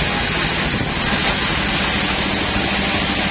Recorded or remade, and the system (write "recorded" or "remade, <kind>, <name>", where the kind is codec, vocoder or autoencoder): recorded